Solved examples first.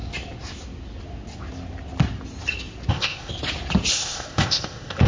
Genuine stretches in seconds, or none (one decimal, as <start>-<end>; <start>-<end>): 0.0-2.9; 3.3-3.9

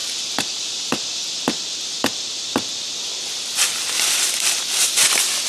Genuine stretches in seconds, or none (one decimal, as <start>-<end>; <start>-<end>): 0.0-5.5

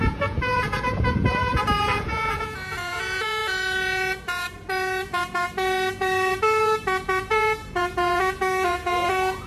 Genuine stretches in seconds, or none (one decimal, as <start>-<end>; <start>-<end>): none

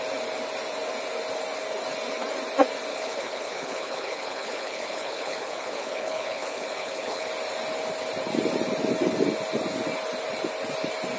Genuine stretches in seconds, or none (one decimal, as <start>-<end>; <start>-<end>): 0.0-2.9; 7.3-11.2

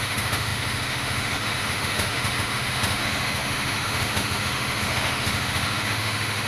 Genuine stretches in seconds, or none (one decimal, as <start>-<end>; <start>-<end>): none